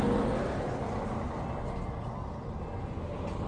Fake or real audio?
real